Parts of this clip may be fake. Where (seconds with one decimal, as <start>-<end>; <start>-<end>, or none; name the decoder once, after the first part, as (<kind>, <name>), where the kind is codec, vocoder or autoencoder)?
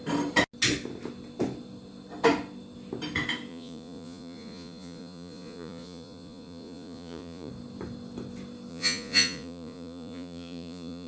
3.5-7.5 (vocoder, Vocos); 8.7-11.1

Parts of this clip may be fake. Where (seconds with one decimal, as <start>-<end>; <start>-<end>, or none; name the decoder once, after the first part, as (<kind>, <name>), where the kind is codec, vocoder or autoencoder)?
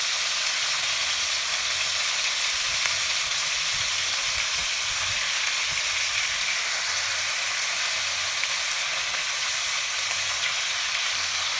4.6-6.4 (vocoder, BigVGAN v2)